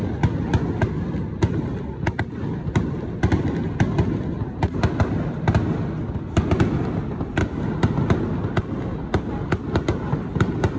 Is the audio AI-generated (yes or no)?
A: no